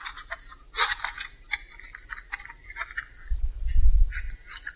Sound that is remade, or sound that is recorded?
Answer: remade